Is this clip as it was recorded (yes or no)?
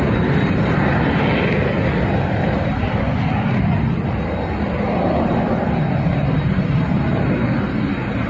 yes